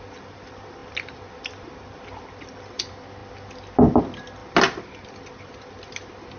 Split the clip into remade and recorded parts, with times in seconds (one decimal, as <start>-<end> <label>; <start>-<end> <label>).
0.0-6.4 recorded